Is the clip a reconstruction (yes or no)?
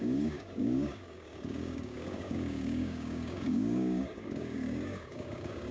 yes